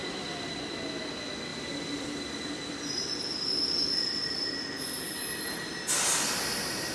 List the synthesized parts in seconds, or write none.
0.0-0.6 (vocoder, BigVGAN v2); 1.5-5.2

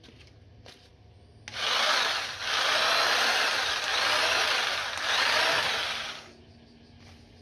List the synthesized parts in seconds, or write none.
none

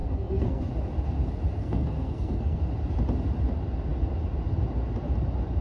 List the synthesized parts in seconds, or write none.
0.0-0.7 (codec, SNAC); 1.6-2.6

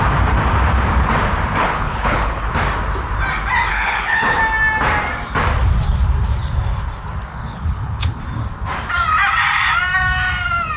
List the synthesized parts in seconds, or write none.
1.6-2.5 (codec, HILCodec); 3.7-4.4; 7.3-8.2

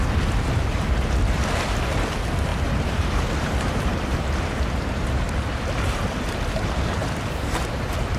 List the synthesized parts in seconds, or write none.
2.5-6.1 (vocoder, BigVGAN v2); 7.0-8.2

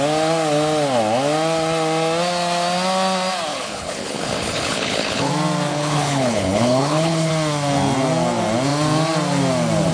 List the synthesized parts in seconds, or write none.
3.5-5.3 (codec, HILCodec); 5.7-7.3